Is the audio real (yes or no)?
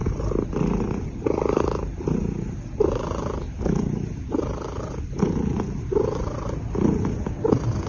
yes